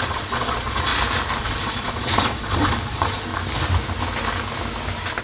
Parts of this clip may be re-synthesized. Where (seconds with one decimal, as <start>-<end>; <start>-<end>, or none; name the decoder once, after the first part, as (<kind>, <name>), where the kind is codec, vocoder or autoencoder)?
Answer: 0.0-0.9 (vocoder, Vocos); 1.4-3.3